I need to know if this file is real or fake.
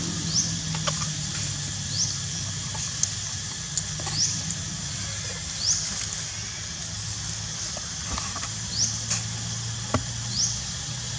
real